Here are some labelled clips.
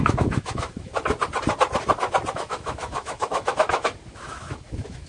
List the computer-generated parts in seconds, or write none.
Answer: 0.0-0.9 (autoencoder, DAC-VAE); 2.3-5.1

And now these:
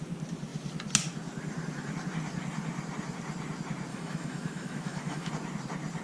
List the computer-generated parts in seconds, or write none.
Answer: 3.9-5.3 (autoencoder, DAC-VAE)

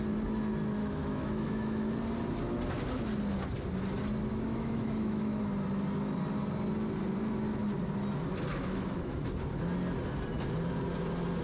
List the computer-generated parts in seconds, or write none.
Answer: 0.8-1.9 (autoencoder, DAC-VAE); 4.3-5.4; 8.5-9.2

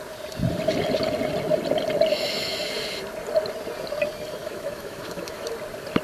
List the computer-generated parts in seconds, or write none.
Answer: 2.1-2.7 (autoencoder, DAC-VAE); 4.4-5.5

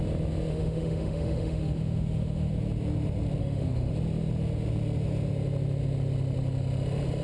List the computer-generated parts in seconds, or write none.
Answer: 0.5-2.5 (autoencoder, DAC-VAE); 3.4-3.9